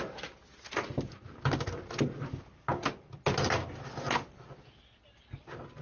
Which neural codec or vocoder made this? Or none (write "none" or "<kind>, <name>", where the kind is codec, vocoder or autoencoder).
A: none